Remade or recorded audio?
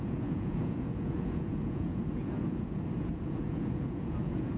remade